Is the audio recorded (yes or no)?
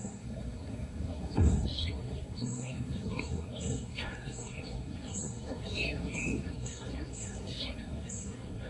no